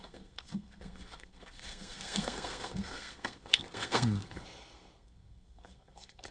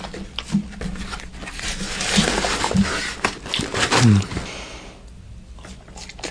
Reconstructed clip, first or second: first